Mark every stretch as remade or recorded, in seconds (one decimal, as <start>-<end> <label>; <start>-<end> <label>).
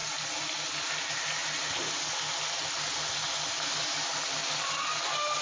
0.0-5.4 recorded